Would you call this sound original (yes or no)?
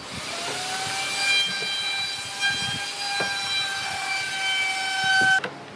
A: yes